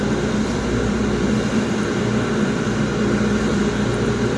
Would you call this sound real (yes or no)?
no